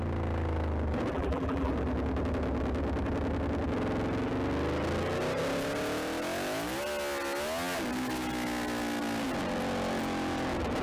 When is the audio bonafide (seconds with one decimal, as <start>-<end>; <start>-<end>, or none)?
0.0-1.1; 1.7-10.8